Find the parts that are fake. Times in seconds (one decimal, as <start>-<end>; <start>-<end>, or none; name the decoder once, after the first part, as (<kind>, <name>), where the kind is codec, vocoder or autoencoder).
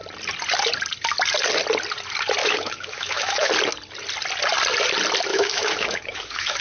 2.4-3.5 (autoencoder, DAC-VAE); 5.3-6.6